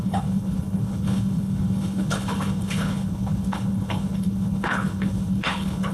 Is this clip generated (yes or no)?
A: yes